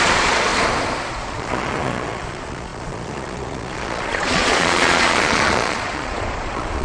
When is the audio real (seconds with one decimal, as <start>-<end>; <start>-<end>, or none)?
0.5-1.1